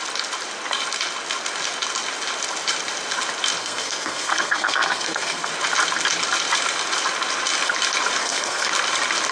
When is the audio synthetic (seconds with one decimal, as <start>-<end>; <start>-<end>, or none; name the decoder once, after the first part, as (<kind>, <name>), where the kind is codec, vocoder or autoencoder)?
3.6-5.5 (codec, SNAC); 8.2-8.7